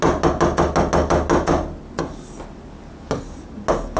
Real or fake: real